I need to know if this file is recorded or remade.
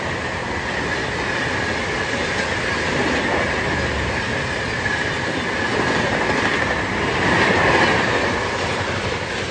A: recorded